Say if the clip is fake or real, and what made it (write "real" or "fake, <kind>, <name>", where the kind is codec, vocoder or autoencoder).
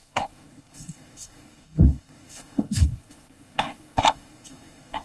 fake, codec, SNAC